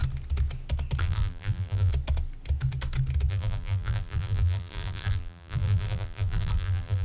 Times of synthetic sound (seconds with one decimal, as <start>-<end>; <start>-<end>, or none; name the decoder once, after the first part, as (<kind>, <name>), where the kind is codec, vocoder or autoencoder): 1.0-1.9 (vocoder, BigVGAN v2); 3.3-7.0